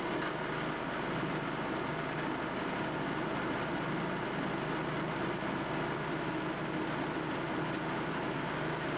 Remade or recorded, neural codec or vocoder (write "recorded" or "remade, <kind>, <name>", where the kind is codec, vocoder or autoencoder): recorded